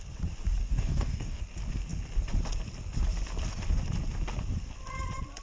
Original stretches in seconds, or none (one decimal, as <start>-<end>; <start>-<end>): 0.0-0.6; 1.4-5.4